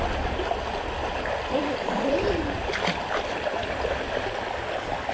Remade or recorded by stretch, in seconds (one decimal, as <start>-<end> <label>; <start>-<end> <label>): 0.0-1.0 recorded; 1.0-4.1 remade; 4.1-5.1 recorded

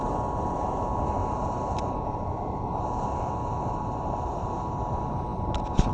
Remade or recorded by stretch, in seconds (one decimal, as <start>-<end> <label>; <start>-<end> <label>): 0.0-1.2 recorded; 1.2-4.7 remade; 4.7-5.9 recorded

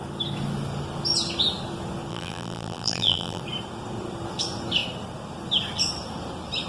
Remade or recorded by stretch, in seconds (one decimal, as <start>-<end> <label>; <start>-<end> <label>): 0.0-2.1 recorded; 2.1-3.4 remade; 3.4-6.7 recorded

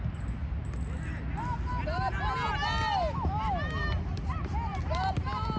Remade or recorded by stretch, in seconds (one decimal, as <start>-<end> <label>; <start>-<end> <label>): 0.0-5.6 recorded

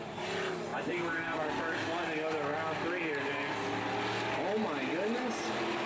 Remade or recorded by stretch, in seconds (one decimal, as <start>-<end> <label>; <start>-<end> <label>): 0.0-0.7 recorded; 0.7-1.5 remade; 1.5-5.9 recorded

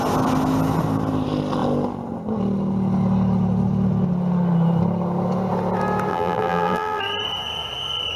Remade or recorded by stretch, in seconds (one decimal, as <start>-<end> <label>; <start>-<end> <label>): 0.0-6.1 recorded; 6.1-7.0 remade; 7.0-8.2 recorded

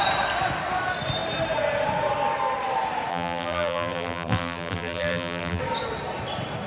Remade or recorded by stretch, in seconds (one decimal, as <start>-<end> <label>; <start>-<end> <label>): 0.0-3.1 recorded; 3.1-5.6 remade; 5.6-6.7 recorded